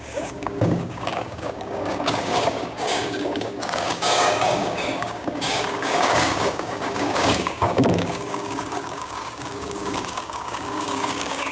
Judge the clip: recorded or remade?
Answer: remade